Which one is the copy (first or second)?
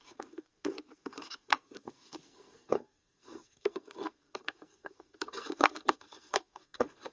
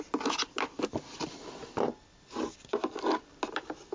first